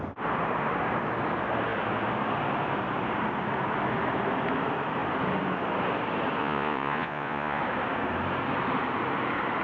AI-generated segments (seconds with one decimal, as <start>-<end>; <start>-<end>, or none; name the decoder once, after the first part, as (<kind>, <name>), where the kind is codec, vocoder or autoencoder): 6.4-7.6 (vocoder, Vocos)